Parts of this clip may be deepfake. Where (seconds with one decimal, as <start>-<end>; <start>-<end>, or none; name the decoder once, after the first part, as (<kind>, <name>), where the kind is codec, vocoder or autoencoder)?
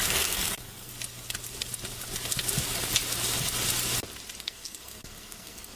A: 0.0-0.9 (codec, SNAC); 4.4-5.8